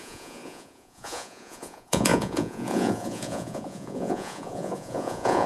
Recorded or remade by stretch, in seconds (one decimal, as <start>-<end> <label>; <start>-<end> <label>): 0.0-5.5 remade